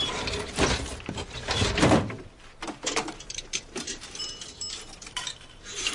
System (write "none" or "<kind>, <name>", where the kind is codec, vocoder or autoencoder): vocoder, BigVGAN v2